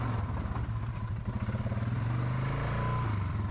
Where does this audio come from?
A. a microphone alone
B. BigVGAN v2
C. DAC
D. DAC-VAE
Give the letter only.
A